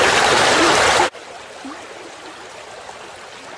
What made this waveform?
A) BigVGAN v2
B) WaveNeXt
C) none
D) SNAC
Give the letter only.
C